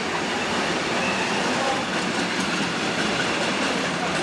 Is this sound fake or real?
real